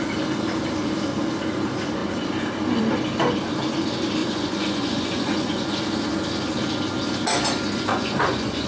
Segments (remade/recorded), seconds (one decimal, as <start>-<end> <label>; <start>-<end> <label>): 0.0-4.2 recorded; 4.2-5.8 remade; 5.8-7.9 recorded; 7.9-8.7 remade